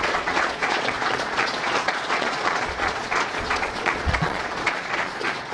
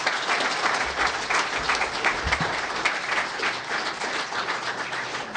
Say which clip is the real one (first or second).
second